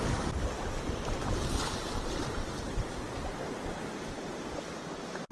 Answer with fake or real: real